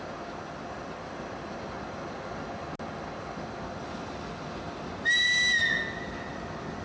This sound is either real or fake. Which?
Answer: real